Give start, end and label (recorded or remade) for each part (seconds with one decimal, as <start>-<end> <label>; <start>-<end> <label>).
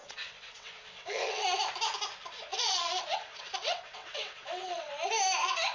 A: 0.0-1.6 remade; 1.6-2.5 recorded; 2.5-4.9 remade; 4.9-5.7 recorded